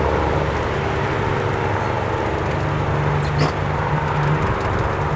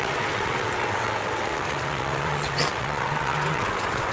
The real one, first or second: first